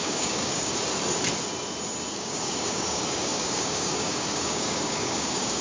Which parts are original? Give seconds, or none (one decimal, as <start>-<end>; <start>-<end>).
0.7-2.1